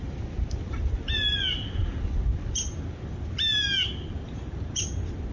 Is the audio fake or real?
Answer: real